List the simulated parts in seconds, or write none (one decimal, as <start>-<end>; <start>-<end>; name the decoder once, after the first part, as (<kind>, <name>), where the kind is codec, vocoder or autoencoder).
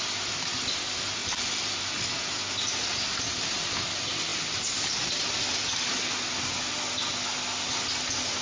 1.2-1.9 (vocoder, BigVGAN v2)